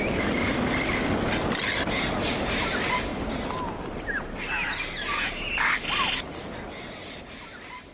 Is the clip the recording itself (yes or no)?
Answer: yes